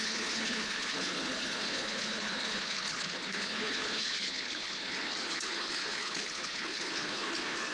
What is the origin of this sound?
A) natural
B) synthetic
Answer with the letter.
B